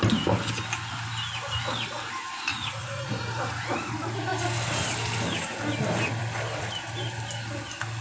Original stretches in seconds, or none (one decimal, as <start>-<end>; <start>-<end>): 0.0-2.5; 3.1-8.0